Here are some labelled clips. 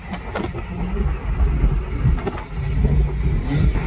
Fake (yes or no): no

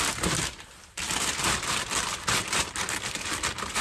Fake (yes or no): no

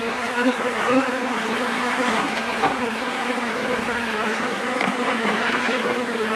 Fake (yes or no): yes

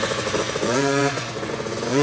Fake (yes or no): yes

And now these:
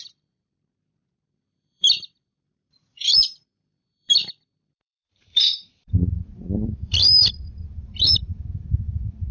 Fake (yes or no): yes